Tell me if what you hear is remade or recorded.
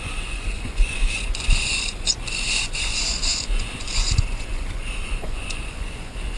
remade